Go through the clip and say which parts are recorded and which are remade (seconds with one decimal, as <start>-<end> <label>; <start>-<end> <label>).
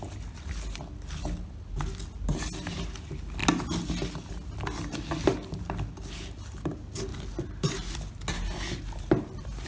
0.0-9.7 recorded